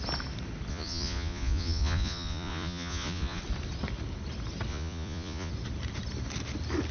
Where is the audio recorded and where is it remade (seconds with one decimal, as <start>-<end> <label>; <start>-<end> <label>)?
0.0-0.7 recorded; 0.7-3.4 remade; 3.4-4.7 recorded; 4.7-5.5 remade; 5.5-6.9 recorded